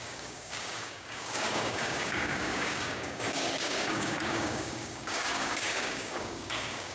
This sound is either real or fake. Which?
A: fake